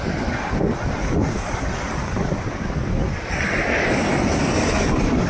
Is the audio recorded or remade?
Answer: remade